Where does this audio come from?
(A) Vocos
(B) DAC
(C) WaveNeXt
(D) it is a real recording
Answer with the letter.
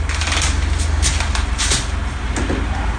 D